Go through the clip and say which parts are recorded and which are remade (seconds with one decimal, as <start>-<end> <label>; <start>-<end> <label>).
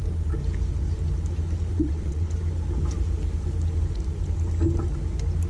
0.0-1.7 recorded; 1.7-2.3 remade; 2.3-5.5 recorded